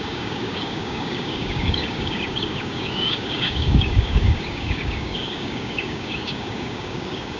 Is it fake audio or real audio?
fake